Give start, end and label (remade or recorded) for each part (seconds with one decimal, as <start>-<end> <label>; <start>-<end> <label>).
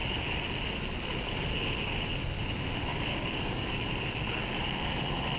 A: 0.0-2.9 recorded; 2.9-3.7 remade; 3.7-5.4 recorded